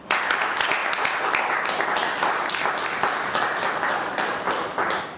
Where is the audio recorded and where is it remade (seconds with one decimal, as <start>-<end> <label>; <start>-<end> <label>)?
0.0-5.2 recorded

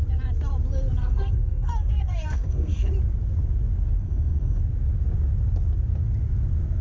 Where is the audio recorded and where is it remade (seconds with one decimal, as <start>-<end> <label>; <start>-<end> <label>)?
0.0-1.0 recorded; 1.0-2.9 remade; 2.9-4.0 recorded; 4.0-4.6 remade; 4.6-6.8 recorded

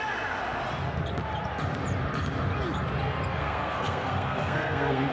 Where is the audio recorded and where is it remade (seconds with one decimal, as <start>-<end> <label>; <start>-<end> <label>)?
0.0-3.4 recorded; 3.4-5.1 remade

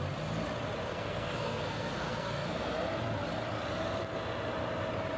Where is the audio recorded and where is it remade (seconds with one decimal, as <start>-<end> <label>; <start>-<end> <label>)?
0.0-0.9 recorded; 0.9-2.7 remade; 2.7-5.2 recorded

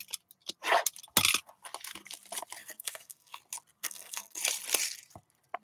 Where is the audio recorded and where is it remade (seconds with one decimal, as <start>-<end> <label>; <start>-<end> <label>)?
0.0-2.6 recorded; 2.6-3.4 remade; 3.4-3.8 recorded; 3.8-4.4 remade; 4.4-5.6 recorded

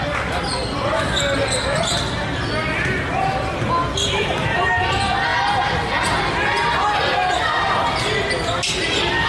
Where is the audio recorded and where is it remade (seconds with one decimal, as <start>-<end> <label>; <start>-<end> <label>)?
0.0-9.3 recorded